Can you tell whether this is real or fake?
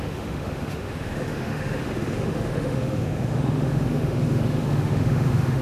fake